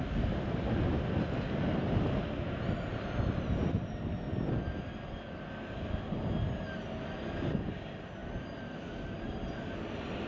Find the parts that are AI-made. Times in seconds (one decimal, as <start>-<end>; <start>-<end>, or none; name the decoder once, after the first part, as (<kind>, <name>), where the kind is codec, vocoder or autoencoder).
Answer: none